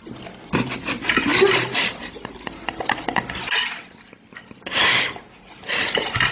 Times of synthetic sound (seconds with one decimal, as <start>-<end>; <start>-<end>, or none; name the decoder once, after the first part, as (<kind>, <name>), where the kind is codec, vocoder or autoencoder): none